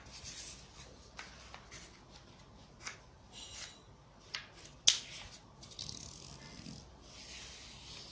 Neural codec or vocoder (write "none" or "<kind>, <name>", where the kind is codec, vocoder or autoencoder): none